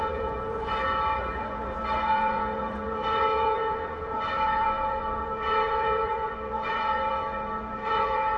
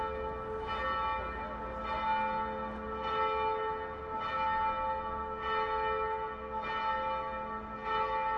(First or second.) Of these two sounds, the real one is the second